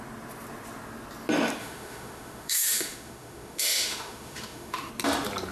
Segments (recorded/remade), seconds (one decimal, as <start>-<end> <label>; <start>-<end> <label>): 0.0-1.6 recorded; 1.6-4.9 remade; 4.9-5.5 recorded